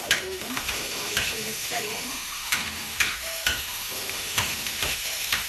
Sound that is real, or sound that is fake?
fake